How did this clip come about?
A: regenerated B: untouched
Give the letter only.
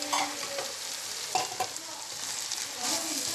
B